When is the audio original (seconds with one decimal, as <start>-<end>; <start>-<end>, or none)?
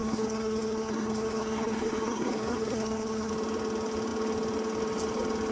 3.3-5.5